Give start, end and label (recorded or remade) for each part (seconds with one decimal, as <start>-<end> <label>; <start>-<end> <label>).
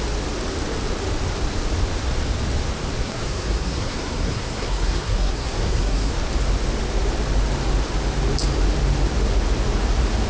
0.0-3.0 recorded; 3.0-6.1 remade; 6.1-10.3 recorded